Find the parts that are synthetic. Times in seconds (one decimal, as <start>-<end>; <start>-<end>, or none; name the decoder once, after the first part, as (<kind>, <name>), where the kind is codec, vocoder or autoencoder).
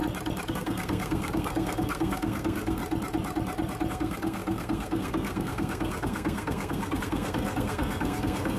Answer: 0.5-2.8 (codec, SNAC); 3.9-8.6